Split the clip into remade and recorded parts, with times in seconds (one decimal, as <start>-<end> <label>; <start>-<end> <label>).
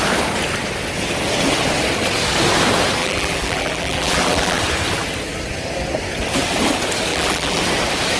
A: 0.0-3.0 recorded; 3.0-4.6 remade; 4.6-7.1 recorded; 7.1-7.6 remade; 7.6-8.2 recorded